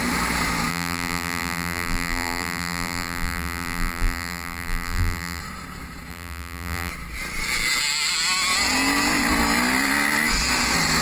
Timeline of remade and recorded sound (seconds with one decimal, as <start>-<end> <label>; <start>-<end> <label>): 0.0-0.7 recorded; 0.7-5.4 remade; 5.4-6.1 recorded; 6.1-6.9 remade; 6.9-11.0 recorded